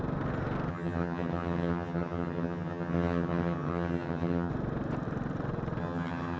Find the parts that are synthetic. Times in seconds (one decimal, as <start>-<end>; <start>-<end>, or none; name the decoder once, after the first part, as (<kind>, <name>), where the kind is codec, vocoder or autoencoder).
0.7-4.5 (vocoder, HiFi-GAN); 5.8-6.4